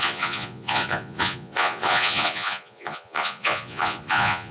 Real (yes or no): no